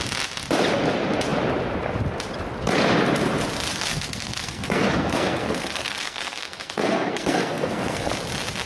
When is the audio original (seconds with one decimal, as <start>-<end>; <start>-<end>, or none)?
0.0-3.9; 8.1-8.7